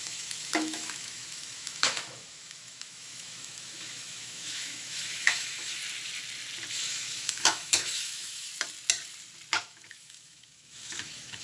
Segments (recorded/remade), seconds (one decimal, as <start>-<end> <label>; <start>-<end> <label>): 0.0-5.8 remade; 5.8-6.7 recorded; 6.7-8.5 remade; 8.5-9.6 recorded; 9.6-11.4 remade